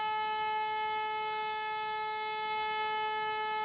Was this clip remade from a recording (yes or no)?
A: no